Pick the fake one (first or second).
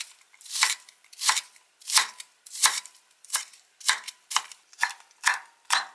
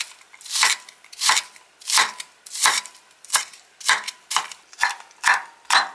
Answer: first